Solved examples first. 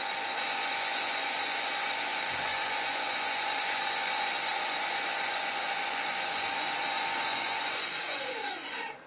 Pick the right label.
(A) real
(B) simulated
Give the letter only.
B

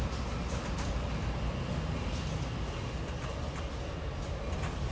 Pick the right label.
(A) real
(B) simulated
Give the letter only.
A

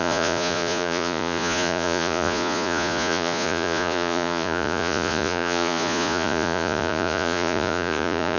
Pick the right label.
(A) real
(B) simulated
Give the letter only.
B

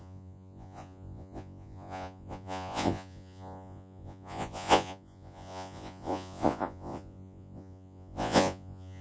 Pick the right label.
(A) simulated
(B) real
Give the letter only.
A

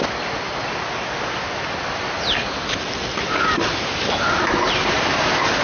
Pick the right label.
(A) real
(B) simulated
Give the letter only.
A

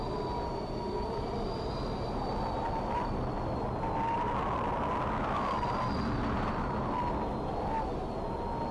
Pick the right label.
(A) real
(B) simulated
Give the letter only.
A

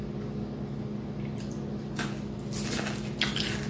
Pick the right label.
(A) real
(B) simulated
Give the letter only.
A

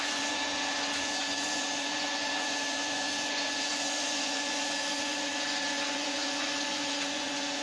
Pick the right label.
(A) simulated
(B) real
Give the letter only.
A